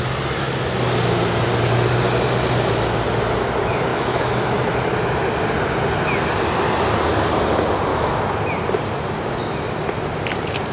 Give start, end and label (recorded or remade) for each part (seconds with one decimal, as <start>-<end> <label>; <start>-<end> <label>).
0.0-3.9 recorded; 3.9-4.6 remade; 4.6-7.9 recorded; 7.9-8.4 remade; 8.4-10.7 recorded